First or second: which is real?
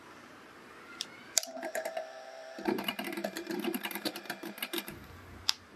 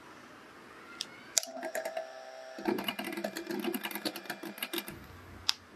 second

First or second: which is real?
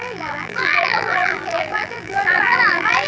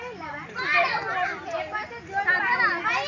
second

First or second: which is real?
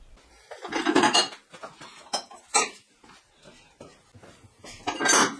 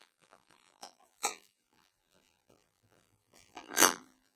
first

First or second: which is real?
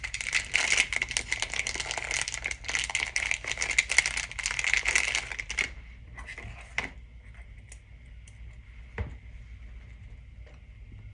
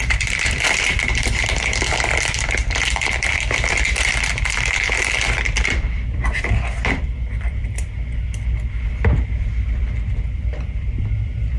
first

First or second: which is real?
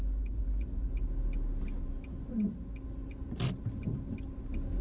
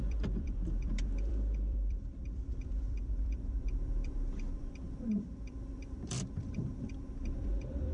first